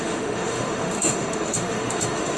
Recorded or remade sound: remade